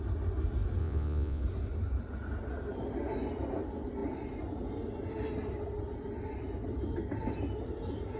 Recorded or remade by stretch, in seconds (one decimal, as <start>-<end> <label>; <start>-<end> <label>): 0.0-0.8 recorded; 0.8-1.4 remade; 1.4-8.2 recorded